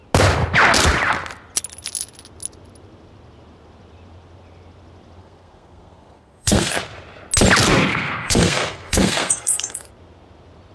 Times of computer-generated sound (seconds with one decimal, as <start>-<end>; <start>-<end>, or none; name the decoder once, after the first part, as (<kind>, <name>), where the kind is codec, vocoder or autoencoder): 5.2-6.8 (codec, SNAC); 7.9-9.9